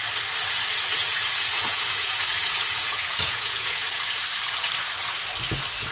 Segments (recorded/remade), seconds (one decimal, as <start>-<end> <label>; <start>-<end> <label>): 0.0-0.9 recorded; 0.9-3.9 remade; 3.9-5.9 recorded